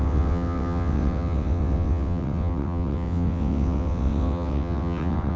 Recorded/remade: remade